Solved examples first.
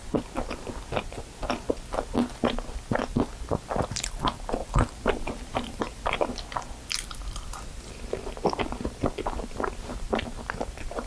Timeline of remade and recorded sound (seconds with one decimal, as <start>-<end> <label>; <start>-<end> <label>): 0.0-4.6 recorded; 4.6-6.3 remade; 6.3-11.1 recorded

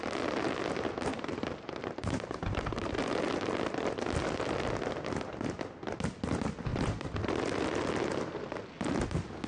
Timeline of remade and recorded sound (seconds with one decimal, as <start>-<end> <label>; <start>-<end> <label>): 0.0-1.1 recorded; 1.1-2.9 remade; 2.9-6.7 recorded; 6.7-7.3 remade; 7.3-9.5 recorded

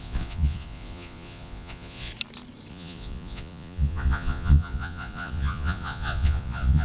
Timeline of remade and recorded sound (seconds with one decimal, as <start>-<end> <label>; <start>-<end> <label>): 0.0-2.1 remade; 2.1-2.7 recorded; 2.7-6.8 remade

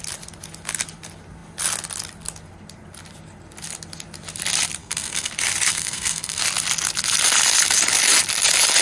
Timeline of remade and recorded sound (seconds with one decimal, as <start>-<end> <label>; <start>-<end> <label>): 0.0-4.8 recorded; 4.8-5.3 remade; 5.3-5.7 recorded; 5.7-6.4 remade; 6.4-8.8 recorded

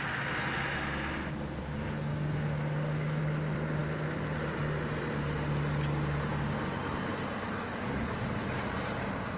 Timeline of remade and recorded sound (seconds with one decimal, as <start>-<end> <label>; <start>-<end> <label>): 0.0-2.1 recorded; 2.1-3.2 remade; 3.2-9.4 recorded